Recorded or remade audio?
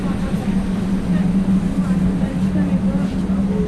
recorded